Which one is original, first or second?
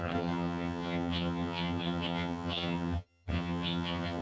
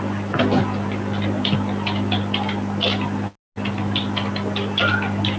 second